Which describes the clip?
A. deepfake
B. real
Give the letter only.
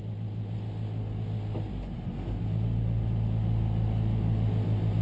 B